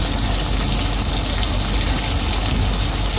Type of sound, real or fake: real